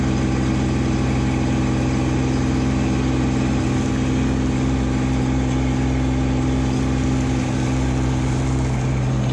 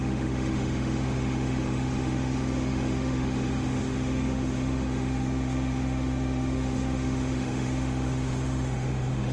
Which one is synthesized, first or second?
second